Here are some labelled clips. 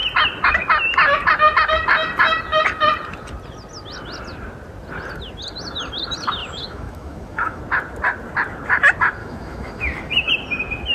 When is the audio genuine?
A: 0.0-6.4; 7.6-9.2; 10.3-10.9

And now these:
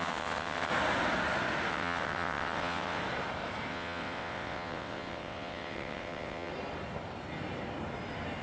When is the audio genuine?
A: 0.7-1.7; 3.0-3.7; 6.5-8.4

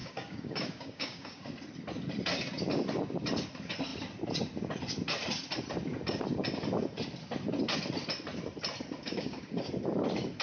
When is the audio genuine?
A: 1.4-9.0; 9.7-10.4

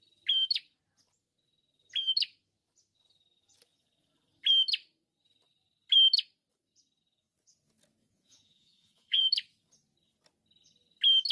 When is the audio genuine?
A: 0.0-8.0; 9.2-11.3

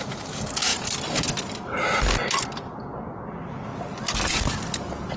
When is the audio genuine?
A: 0.0-5.2

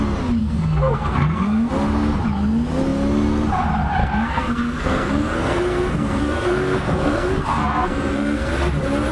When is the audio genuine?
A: 0.0-0.4; 1.7-4.0; 8.5-9.1

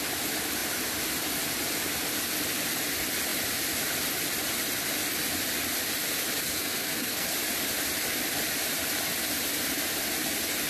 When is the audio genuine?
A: 0.0-6.4; 7.3-10.7